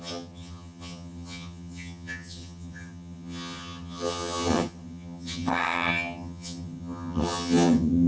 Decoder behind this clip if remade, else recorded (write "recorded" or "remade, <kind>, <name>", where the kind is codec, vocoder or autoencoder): remade, vocoder, HiFi-GAN